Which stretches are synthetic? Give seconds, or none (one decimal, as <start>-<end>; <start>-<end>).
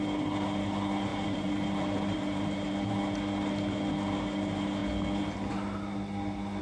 1.1-2.7